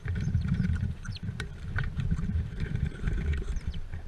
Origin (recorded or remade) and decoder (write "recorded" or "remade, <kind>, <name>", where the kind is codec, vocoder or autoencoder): remade, vocoder, BigVGAN v2